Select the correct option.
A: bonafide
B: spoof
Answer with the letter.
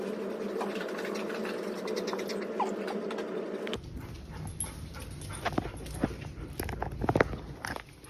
A